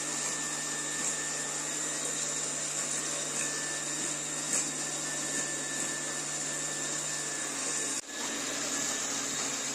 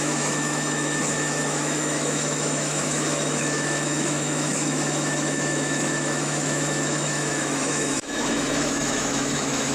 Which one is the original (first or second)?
first